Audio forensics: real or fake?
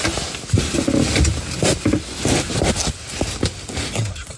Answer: real